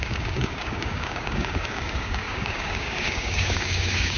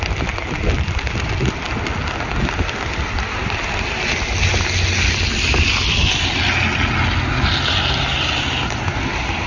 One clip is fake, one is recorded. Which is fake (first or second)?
first